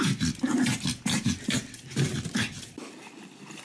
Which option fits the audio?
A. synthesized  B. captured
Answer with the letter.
B